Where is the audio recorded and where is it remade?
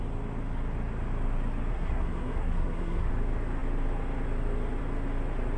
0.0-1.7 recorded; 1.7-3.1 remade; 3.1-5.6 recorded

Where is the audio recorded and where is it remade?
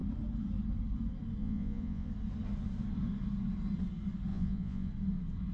0.0-1.4 recorded; 1.4-2.1 remade; 2.1-4.3 recorded; 4.3-4.9 remade; 4.9-5.5 recorded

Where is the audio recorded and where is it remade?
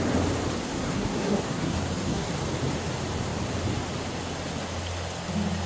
0.0-0.6 recorded; 0.6-2.3 remade; 2.3-5.7 recorded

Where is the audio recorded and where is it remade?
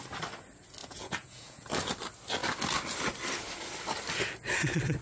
0.0-0.8 recorded; 0.8-1.7 remade; 1.7-5.0 recorded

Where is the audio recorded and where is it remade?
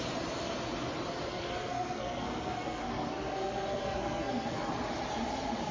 0.0-1.3 recorded; 1.3-4.7 remade; 4.7-5.7 recorded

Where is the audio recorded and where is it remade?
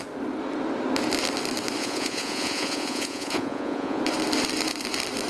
0.0-1.8 recorded; 1.8-4.0 remade; 4.0-5.3 recorded